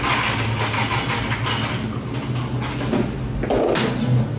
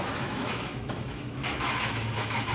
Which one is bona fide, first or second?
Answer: first